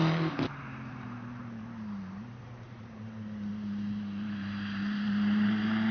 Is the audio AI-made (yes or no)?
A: yes